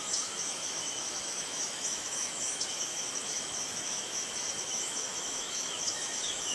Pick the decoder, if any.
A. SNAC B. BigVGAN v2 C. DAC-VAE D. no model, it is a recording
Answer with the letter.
C